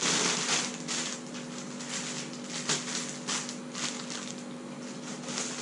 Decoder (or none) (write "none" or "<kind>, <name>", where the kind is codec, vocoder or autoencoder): none